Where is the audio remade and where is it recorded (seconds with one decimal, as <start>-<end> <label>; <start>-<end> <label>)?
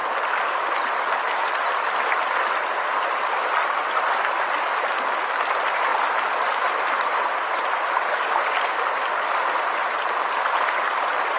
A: 0.0-11.4 recorded